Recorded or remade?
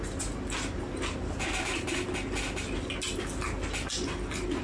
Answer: recorded